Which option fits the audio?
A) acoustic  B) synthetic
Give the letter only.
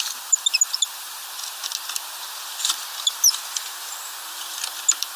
A